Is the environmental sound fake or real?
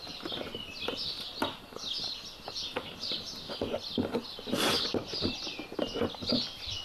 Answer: real